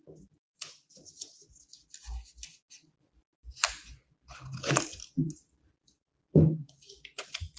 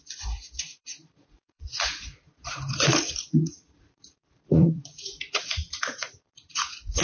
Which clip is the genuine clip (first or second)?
first